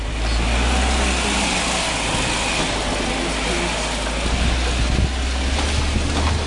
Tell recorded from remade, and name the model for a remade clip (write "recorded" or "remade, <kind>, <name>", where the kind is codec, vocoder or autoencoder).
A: recorded